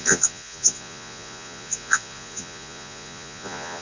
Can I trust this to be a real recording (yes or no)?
no